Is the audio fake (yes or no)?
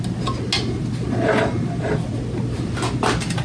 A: no